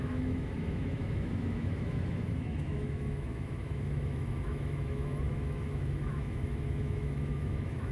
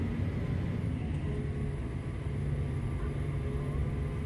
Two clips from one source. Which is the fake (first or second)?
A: first